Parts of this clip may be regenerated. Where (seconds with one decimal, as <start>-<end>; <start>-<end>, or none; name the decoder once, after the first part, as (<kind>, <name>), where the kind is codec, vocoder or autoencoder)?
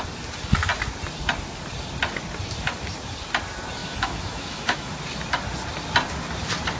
3.8-4.9 (autoencoder, DAC-VAE)